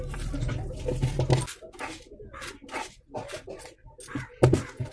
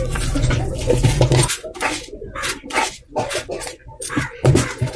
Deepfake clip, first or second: second